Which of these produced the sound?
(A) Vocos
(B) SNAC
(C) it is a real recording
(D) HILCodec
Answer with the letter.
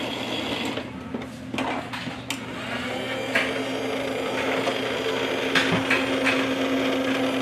C